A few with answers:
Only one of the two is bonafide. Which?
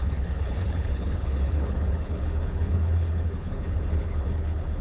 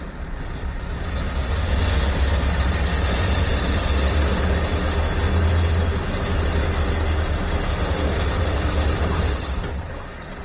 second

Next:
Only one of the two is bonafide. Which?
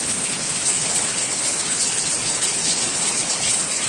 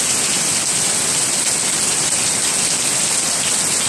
second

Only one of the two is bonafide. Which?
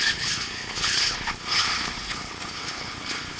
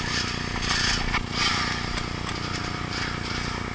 second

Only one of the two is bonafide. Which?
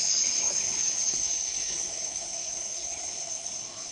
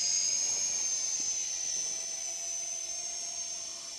second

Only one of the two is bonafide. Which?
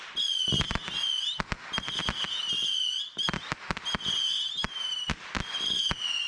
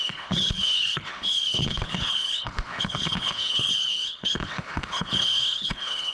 first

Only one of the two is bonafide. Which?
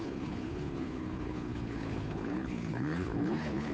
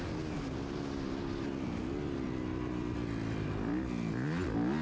second